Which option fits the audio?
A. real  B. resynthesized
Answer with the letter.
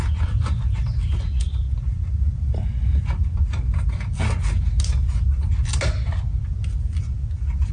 A